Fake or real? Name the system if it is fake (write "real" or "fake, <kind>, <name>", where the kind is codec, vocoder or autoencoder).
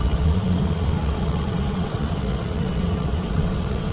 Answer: fake, vocoder, WaveNeXt